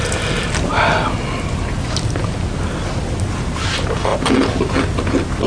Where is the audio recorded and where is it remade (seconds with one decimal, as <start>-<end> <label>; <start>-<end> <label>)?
0.0-5.5 recorded